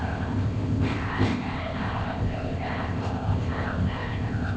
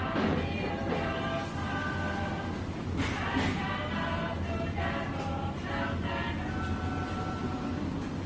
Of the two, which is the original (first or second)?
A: second